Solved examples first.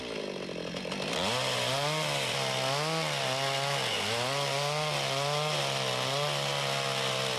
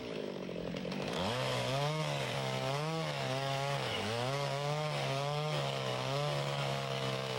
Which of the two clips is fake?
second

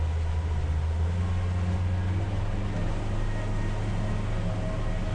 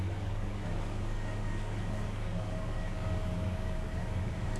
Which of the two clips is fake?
second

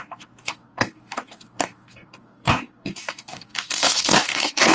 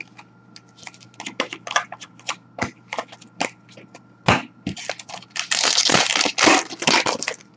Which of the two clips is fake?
first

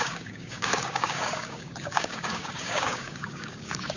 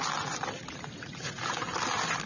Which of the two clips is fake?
first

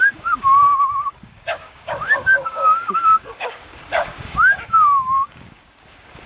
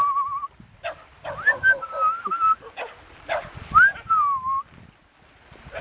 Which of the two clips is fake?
first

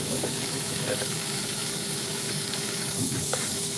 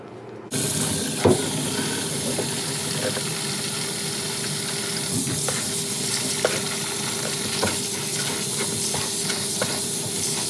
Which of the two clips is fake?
first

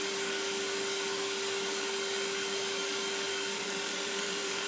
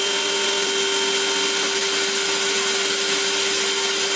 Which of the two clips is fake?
first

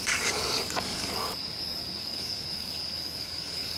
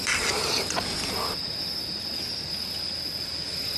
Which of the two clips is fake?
first